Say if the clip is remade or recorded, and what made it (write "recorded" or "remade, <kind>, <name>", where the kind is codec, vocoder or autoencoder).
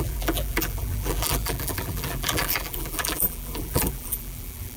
remade, vocoder, BigVGAN v2